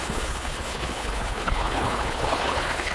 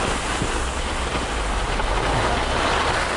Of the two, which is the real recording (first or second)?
second